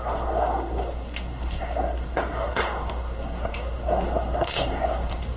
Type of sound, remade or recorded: remade